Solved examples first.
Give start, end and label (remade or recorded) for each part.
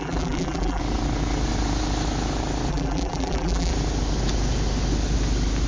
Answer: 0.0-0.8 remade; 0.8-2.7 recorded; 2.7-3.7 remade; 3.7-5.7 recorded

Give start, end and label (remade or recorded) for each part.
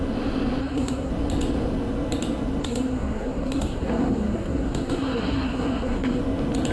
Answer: 0.0-0.6 recorded; 0.6-1.1 remade; 1.1-2.6 recorded; 2.6-6.2 remade; 6.2-6.7 recorded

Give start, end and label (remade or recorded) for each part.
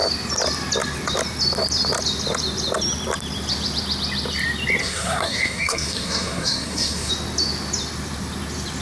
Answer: 0.0-4.8 recorded; 4.8-7.1 remade; 7.1-8.8 recorded